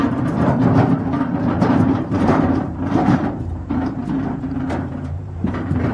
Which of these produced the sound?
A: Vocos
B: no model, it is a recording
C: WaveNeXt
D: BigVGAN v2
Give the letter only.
D